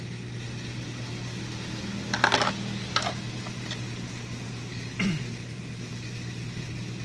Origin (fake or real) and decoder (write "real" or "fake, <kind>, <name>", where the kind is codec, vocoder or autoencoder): real